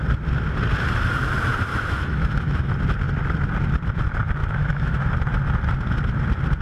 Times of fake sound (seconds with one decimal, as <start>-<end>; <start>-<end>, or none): 1.7-2.7; 4.4-5.1